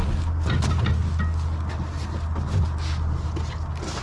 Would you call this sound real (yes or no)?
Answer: yes